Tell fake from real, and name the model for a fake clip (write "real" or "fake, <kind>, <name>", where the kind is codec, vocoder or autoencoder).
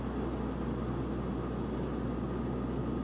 real